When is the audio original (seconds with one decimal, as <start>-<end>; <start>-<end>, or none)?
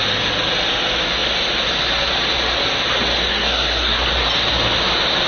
0.0-3.3; 4.0-5.3